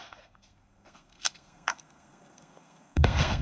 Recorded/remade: remade